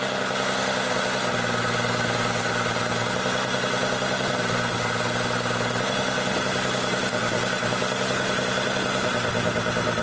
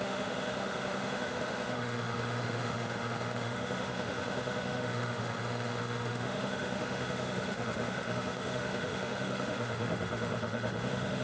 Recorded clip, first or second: first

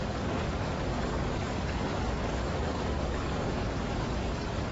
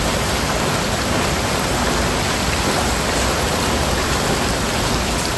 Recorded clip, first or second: second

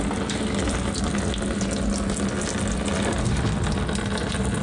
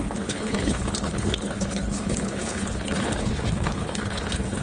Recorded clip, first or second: first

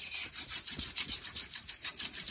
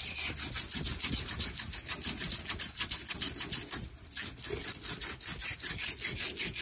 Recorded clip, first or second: second